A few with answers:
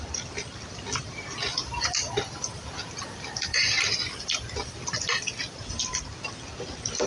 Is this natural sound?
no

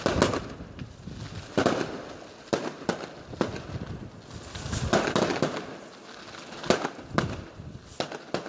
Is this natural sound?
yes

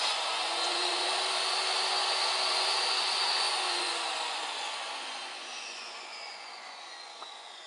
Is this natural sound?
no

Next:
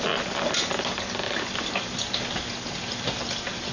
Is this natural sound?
yes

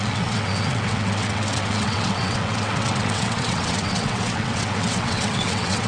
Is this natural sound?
no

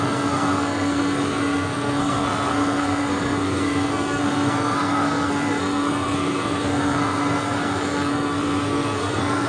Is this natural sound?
no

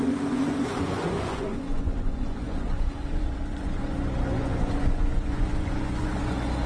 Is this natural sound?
no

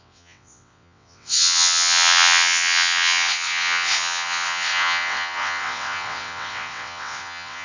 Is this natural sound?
no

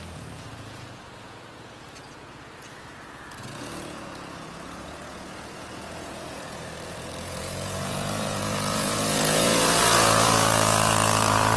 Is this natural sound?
no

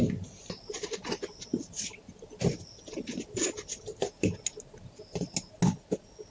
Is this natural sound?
yes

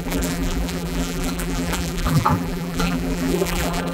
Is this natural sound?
no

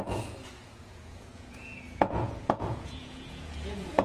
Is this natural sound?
no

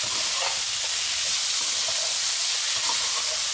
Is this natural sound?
yes